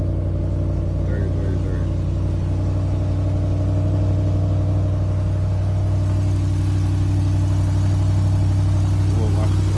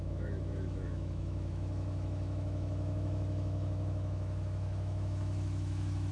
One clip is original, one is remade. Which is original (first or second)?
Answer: first